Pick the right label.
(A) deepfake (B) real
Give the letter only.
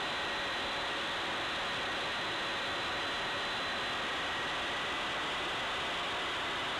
B